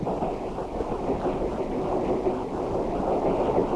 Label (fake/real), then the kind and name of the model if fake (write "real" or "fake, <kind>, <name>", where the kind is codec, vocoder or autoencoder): real